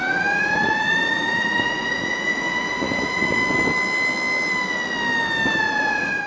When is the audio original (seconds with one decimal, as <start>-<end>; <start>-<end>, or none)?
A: 3.4-5.6